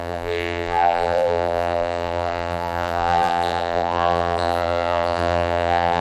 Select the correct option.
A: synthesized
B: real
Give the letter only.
A